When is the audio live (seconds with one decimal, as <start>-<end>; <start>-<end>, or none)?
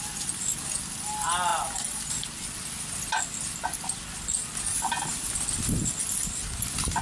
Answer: 0.0-7.0